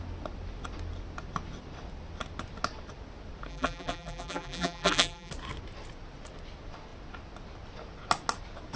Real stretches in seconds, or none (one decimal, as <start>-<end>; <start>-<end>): 0.0-3.5; 5.3-8.8